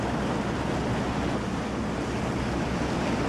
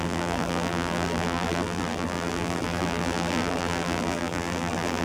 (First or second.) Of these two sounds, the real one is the first